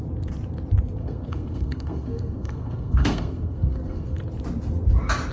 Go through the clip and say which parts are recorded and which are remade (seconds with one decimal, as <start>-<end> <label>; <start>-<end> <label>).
0.0-1.0 recorded; 1.0-4.2 remade; 4.2-5.3 recorded